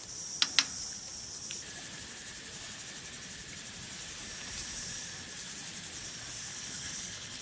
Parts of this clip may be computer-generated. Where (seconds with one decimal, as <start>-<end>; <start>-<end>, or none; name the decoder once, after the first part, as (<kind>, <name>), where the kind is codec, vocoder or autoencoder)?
6.5-7.4 (codec, HILCodec)